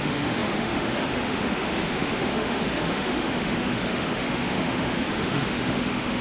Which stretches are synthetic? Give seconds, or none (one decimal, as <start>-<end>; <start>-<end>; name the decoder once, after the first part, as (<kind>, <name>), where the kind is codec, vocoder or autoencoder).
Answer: 0.0-6.2 (autoencoder, DAC-VAE)